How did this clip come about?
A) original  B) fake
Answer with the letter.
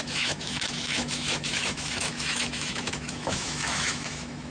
B